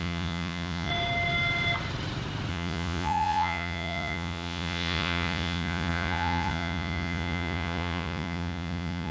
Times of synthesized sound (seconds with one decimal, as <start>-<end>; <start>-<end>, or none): 0.0-0.9; 2.5-9.1